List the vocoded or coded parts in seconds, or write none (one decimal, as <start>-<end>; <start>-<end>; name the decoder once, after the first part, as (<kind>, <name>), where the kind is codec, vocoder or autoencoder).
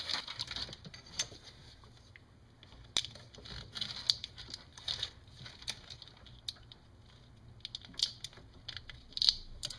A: none